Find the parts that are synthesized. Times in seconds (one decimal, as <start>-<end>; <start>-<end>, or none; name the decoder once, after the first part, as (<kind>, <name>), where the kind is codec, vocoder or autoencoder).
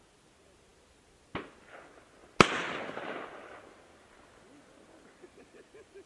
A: none